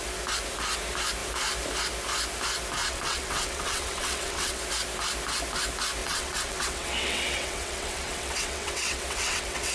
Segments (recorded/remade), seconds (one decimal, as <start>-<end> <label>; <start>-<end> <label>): 0.0-2.8 recorded; 2.8-4.6 remade; 4.6-6.0 recorded; 6.0-9.7 remade